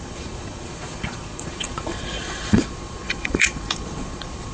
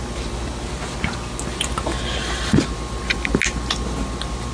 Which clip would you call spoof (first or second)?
first